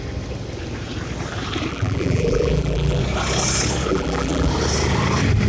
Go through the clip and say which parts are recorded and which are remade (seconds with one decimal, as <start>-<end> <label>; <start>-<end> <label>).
0.0-1.7 recorded; 1.7-3.0 remade; 3.0-3.9 recorded; 3.9-4.5 remade; 4.5-5.5 recorded

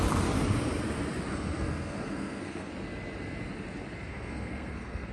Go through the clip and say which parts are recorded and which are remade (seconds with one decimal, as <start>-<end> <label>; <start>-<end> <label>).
0.0-1.3 recorded; 1.3-2.7 remade; 2.7-4.1 recorded; 4.1-5.1 remade